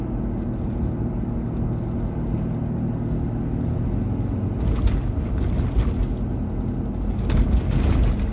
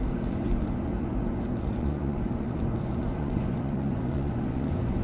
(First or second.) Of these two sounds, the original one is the first